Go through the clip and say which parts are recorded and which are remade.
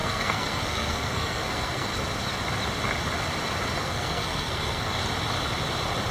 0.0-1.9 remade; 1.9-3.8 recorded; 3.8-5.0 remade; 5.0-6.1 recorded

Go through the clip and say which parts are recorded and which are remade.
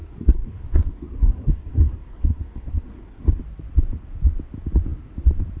0.0-3.4 remade; 3.4-5.6 recorded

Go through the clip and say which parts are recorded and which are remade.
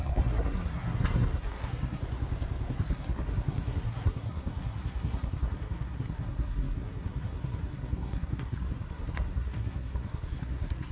0.0-2.0 remade; 2.0-2.7 recorded; 2.7-10.9 remade